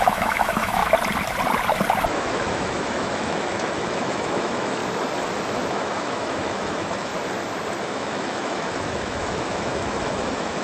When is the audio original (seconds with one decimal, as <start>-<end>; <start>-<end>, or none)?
0.8-2.1; 4.8-5.7; 7.1-7.8

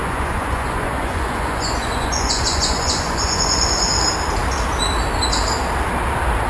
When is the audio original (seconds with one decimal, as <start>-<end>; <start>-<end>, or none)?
3.9-6.5